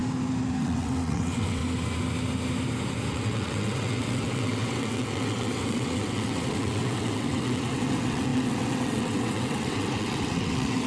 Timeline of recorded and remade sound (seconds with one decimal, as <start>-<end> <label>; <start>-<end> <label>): 0.0-0.6 recorded; 0.6-1.6 remade; 1.6-3.1 recorded; 3.1-10.9 remade